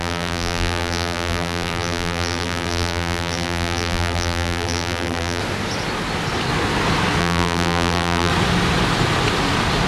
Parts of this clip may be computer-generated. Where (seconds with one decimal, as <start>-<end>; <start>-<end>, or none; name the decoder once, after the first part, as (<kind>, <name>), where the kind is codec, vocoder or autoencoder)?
0.0-5.4 (vocoder, BigVGAN v2); 7.2-8.3